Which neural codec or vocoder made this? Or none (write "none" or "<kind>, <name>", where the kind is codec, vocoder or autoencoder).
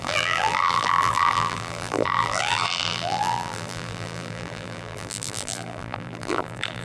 vocoder, BigVGAN v2